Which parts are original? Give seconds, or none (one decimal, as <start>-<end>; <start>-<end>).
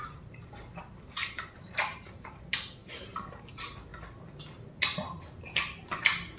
2.4-2.8; 3.5-6.4